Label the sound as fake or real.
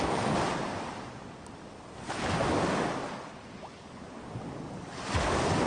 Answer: real